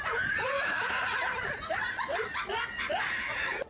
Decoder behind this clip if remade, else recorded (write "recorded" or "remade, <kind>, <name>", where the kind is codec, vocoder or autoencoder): remade, vocoder, Vocos